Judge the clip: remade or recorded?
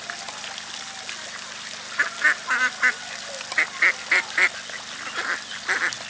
recorded